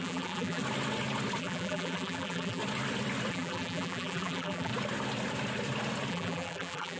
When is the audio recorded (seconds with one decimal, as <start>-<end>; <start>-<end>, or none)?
0.6-1.4; 2.6-3.3; 4.7-6.1